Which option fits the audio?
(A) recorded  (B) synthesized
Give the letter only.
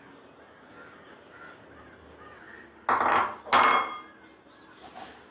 A